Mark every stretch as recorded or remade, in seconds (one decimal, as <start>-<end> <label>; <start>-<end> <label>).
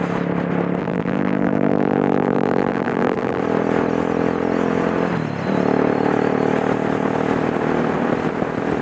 0.0-0.8 recorded; 0.8-3.4 remade; 3.4-8.8 recorded